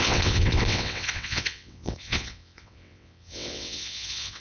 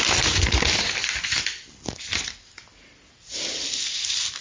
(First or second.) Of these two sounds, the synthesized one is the first